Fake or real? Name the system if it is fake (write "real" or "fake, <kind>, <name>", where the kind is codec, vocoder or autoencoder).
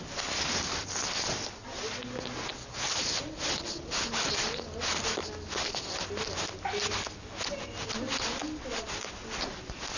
real